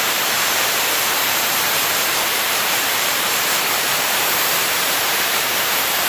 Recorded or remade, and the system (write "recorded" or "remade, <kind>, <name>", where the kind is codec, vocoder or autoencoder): remade, vocoder, BigVGAN v2